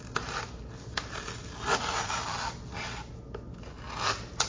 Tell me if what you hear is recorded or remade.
recorded